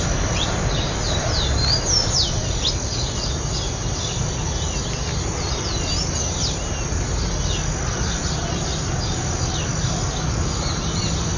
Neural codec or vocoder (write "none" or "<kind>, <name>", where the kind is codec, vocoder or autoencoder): none